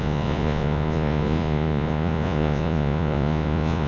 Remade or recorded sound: remade